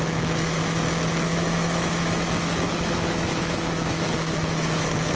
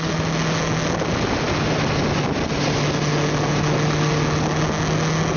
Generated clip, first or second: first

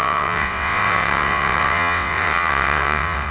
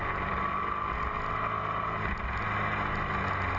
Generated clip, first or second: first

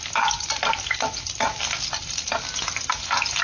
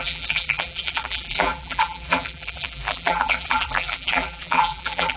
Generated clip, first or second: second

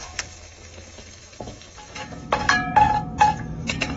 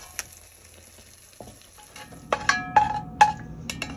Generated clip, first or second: first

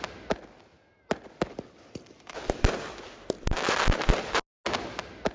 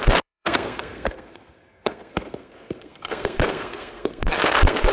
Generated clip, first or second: second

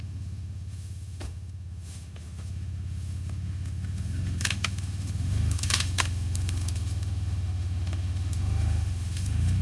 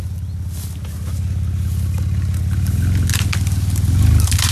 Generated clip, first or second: first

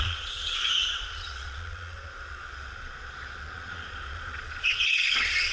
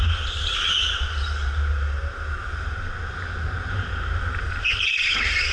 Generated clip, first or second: first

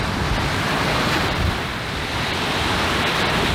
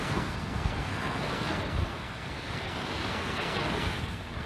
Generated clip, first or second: second